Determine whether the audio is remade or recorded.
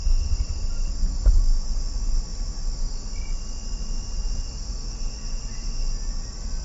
recorded